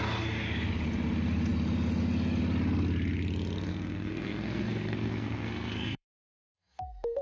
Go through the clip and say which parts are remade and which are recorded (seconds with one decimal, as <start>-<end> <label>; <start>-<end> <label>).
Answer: 0.0-3.7 recorded; 3.7-7.2 remade